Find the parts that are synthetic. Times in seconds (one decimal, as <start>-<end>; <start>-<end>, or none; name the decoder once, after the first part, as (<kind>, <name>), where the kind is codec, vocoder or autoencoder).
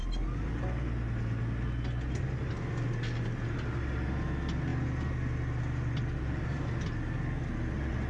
none